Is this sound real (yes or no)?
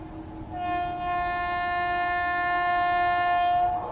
yes